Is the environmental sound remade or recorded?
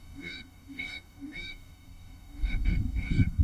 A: remade